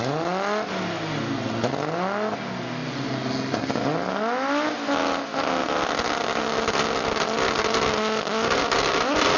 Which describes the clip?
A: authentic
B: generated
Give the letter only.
A